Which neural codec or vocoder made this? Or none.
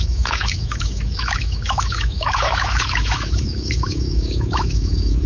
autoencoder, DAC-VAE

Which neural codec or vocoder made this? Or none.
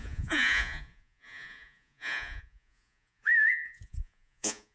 vocoder, Vocos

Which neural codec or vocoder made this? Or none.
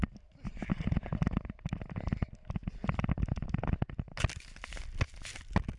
none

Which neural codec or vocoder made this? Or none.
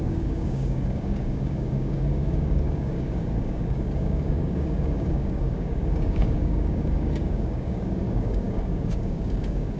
codec, DAC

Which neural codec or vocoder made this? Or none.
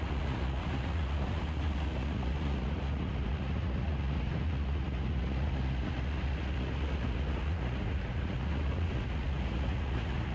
vocoder, Vocos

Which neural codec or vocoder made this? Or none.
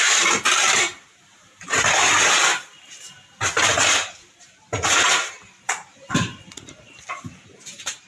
vocoder, BigVGAN v2